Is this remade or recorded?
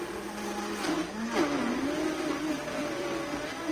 recorded